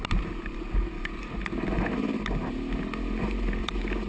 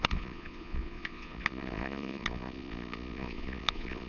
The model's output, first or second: second